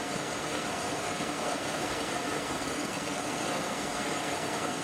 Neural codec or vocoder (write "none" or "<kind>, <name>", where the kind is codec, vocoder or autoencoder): codec, SNAC